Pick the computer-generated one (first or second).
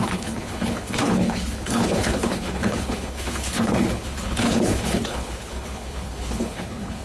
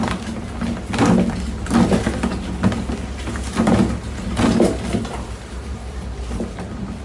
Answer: first